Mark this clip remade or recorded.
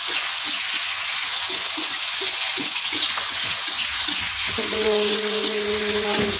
remade